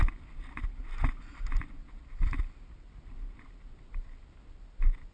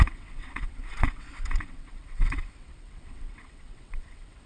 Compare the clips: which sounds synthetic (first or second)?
second